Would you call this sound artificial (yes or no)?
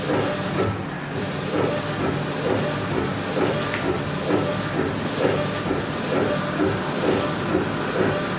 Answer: no